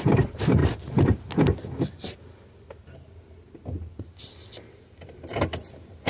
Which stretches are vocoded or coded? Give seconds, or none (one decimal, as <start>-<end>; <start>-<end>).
none